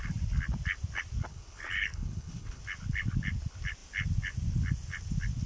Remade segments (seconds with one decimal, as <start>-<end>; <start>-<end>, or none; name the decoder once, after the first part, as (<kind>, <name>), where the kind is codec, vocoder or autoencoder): 1.3-2.6 (codec, HILCodec)